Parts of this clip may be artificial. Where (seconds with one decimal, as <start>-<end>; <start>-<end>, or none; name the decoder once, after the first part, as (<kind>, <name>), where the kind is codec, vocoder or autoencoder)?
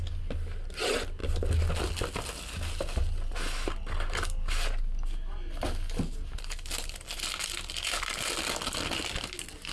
none